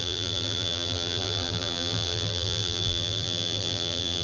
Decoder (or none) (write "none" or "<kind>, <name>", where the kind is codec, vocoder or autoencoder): vocoder, BigVGAN v2